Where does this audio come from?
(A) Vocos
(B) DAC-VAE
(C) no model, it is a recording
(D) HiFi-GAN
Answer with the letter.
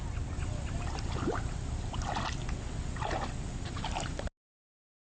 C